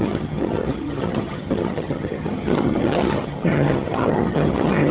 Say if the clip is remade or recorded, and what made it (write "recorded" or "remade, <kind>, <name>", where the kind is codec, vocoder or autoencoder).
remade, vocoder, HiFi-GAN